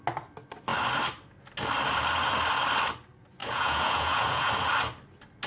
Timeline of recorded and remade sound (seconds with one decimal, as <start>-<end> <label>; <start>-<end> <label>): 0.0-3.4 recorded; 3.4-4.5 remade; 4.5-5.5 recorded